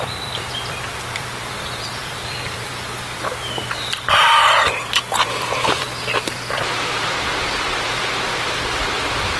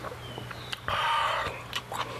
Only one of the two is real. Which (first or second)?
second